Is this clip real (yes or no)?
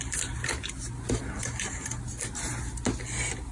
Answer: yes